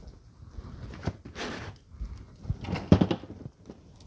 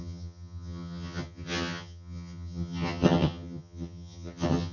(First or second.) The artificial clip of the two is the second